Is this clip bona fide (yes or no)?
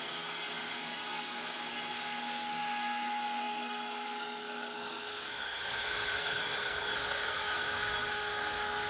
no